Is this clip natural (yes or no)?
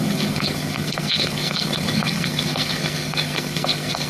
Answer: no